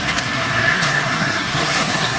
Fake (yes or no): yes